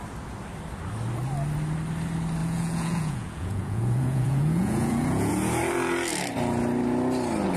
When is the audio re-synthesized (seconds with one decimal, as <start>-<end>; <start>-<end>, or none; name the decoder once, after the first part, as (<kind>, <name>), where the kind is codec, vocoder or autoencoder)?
2.4-5.3 (vocoder, Vocos)